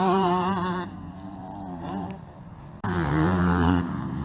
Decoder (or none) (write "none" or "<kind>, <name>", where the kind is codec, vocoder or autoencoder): vocoder, BigVGAN v2